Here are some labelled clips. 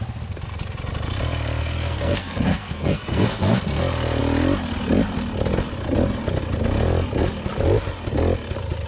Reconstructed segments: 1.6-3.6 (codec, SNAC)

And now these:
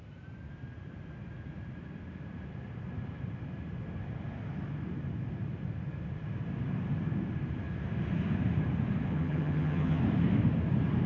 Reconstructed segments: 9.1-10.0 (vocoder, HiFi-GAN)

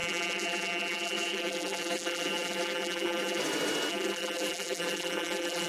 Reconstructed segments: 0.0-3.4 (vocoder, BigVGAN v2); 3.9-5.7

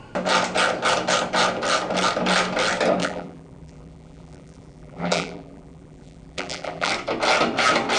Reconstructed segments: 3.0-6.9 (vocoder, BigVGAN v2)

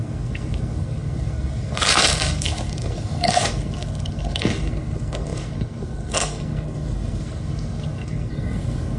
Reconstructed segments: 0.0-9.0 (codec, SNAC)

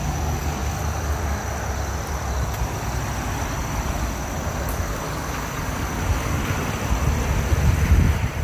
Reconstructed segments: 0.0-0.6 (codec, DAC); 4.9-6.4

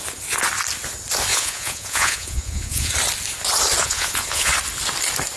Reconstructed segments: 1.3-2.9 (vocoder, Vocos); 3.8-4.5